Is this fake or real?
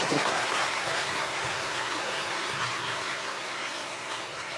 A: fake